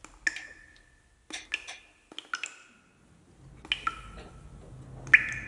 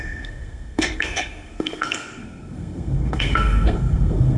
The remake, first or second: second